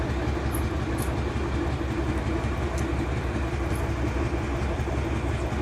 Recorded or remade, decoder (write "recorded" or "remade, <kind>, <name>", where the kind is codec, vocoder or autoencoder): recorded